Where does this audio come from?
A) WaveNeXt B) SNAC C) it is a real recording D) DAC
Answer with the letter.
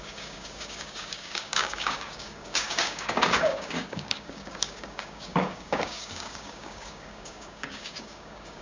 D